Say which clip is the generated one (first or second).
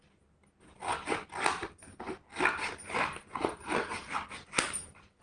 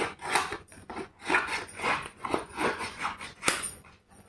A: second